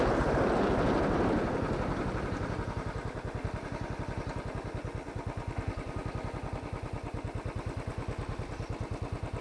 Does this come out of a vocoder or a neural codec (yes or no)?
no